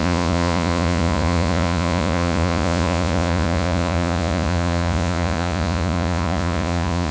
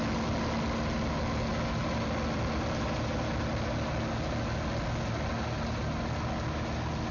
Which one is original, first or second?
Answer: second